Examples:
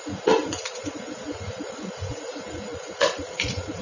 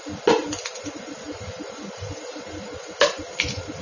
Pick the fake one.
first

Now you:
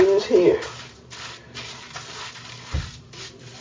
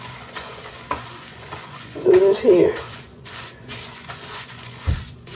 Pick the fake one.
second